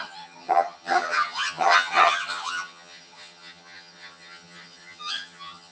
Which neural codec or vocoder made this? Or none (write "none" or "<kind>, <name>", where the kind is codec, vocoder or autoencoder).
vocoder, HiFi-GAN